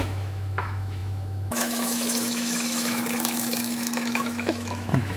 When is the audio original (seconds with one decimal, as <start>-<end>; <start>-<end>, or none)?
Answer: none